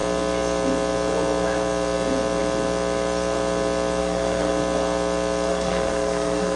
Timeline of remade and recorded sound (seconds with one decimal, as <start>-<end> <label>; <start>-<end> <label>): 0.0-4.0 recorded; 4.0-4.5 remade; 4.5-5.5 recorded; 5.5-6.6 remade